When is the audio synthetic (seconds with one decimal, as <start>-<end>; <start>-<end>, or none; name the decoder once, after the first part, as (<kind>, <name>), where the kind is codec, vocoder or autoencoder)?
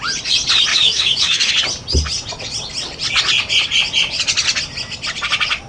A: 0.7-1.5 (autoencoder, DAC-VAE)